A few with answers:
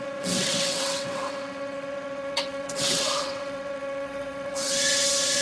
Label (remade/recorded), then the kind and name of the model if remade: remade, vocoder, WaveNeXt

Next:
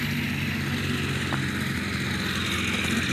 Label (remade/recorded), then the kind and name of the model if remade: recorded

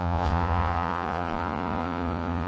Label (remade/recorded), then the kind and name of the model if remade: remade, vocoder, Vocos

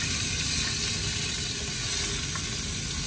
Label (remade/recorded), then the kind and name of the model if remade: recorded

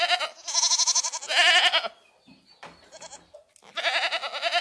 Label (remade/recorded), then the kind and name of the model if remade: recorded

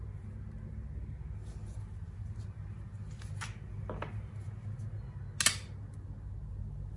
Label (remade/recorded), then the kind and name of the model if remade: recorded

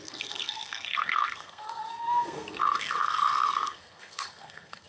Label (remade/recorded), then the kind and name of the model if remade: remade, codec, SNAC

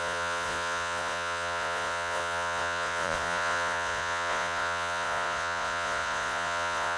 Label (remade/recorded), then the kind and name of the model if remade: remade, vocoder, Vocos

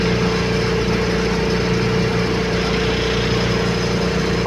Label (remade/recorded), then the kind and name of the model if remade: recorded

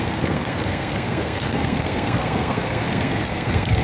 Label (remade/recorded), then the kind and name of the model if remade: remade, codec, SNAC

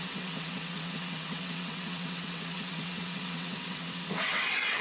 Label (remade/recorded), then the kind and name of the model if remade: remade, vocoder, WaveNeXt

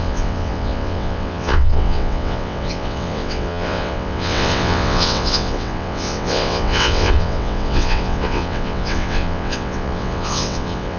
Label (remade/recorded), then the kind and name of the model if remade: remade, vocoder, WaveNeXt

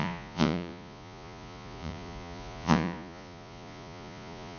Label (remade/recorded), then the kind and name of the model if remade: remade, vocoder, Vocos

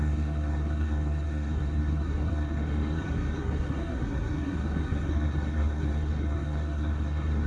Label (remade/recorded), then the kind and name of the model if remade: remade, codec, SNAC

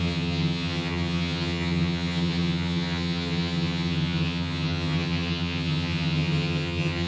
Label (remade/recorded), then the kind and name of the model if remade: remade, vocoder, HiFi-GAN